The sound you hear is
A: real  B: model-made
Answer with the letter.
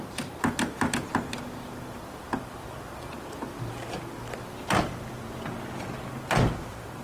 A